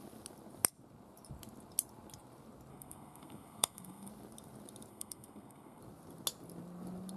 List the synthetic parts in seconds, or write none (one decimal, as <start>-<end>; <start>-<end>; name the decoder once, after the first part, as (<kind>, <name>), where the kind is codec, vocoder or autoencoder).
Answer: 2.7-4.1 (codec, SNAC); 4.9-5.8